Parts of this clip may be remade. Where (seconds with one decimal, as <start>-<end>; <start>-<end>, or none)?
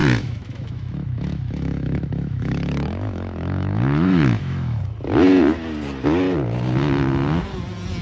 0.0-4.8